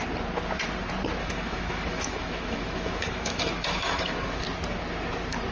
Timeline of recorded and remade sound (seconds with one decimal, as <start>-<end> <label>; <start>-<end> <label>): 0.0-1.2 recorded; 1.2-4.4 remade; 4.4-5.5 recorded